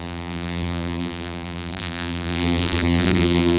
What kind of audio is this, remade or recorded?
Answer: remade